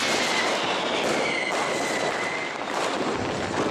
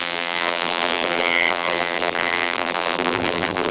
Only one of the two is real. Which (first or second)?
first